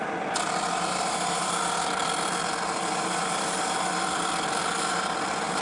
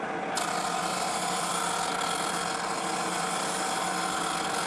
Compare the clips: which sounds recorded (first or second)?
second